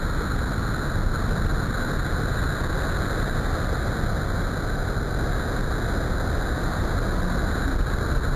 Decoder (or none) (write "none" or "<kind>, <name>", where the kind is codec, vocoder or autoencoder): none